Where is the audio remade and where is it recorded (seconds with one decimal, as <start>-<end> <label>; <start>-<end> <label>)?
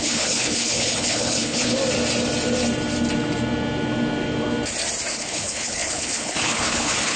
0.0-1.8 remade; 1.8-5.1 recorded; 5.1-7.2 remade